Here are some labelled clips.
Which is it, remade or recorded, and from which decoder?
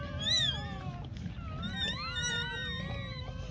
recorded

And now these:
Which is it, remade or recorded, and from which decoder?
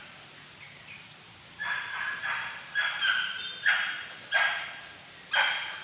recorded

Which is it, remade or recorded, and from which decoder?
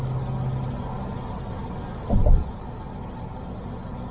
recorded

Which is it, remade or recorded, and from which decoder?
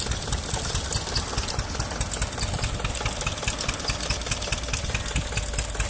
recorded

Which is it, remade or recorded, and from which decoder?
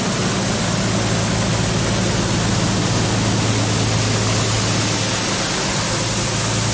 recorded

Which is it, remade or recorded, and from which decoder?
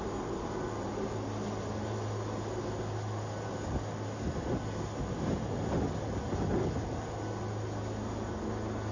recorded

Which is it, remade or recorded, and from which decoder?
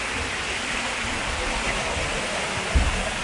recorded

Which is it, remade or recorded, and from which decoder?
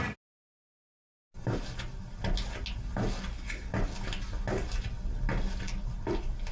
recorded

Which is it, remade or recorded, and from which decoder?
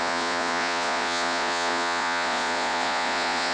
remade, vocoder, Vocos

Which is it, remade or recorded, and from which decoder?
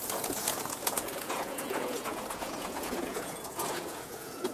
remade, vocoder, Vocos